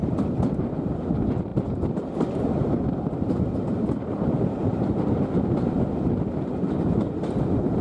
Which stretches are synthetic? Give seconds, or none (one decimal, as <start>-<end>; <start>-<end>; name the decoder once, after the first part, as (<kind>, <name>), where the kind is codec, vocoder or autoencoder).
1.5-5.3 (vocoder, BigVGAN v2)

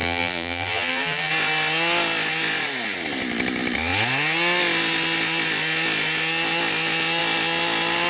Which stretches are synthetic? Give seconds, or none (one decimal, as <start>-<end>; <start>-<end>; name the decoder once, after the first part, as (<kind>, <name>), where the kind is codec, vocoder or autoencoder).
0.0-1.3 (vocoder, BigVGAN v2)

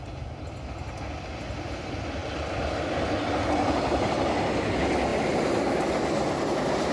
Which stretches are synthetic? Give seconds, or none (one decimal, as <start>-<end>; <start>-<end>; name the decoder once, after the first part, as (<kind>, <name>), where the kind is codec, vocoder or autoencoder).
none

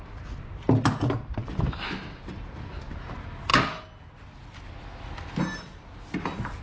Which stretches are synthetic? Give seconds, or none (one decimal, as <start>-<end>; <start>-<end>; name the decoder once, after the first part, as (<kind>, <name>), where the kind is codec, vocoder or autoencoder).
none

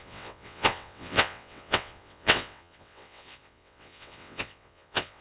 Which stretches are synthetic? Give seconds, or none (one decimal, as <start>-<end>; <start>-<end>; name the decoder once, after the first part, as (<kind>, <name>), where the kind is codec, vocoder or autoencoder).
0.0-5.2 (vocoder, WaveNeXt)

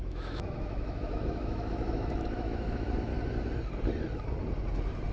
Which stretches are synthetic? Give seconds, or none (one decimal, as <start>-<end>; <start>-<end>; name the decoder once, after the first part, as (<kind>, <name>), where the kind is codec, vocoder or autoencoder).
0.0-3.1 (autoencoder, DAC-VAE)

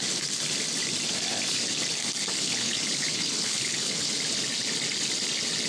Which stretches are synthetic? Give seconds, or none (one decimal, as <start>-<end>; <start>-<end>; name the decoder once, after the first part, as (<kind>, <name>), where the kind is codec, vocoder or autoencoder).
2.3-4.2 (codec, HILCodec)

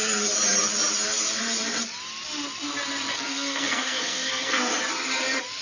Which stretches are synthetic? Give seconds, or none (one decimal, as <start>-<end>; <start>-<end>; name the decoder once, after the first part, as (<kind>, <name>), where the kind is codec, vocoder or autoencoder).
3.1-4.7 (codec, SNAC)